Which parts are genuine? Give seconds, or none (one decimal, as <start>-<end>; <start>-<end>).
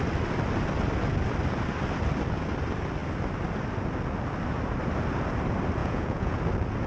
0.0-5.8; 6.4-6.9